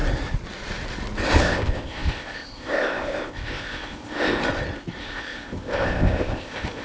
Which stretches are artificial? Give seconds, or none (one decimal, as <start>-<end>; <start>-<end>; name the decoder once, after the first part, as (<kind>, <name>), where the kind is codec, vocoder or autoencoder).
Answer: 1.4-4.4 (codec, ZipCodec); 5.0-6.8